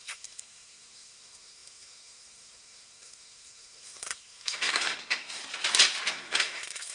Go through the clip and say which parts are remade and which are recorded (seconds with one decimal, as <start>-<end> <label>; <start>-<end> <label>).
0.0-5.4 remade; 5.4-6.1 recorded; 6.1-6.9 remade